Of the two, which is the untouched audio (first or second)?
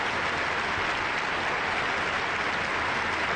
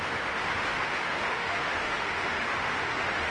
first